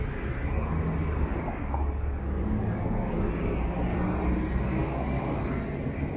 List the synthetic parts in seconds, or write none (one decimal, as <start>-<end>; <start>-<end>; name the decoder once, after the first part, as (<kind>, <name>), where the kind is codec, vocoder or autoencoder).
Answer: 1.0-3.3 (codec, DAC); 4.8-5.5